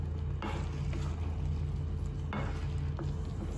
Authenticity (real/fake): real